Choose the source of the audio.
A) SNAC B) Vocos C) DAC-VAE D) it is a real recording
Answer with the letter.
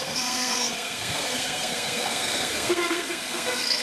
A